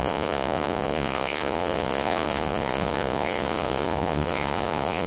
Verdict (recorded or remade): remade